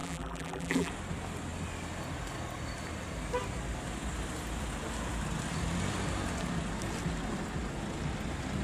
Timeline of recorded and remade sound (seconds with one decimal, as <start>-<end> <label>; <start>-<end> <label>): 0.0-0.9 remade; 0.9-8.6 recorded